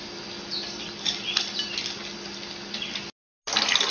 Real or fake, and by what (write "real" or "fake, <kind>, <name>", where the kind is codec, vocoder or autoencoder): real